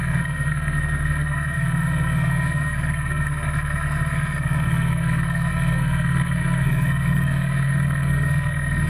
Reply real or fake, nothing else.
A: fake